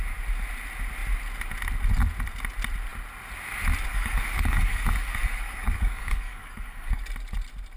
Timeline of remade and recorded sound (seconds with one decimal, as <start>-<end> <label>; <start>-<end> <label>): 0.0-3.9 recorded; 3.9-7.0 remade; 7.0-7.8 recorded